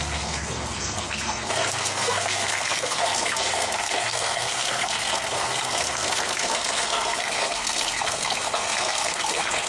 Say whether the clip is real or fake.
fake